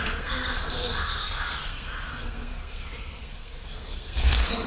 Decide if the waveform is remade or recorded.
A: remade